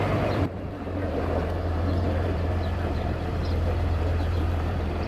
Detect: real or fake fake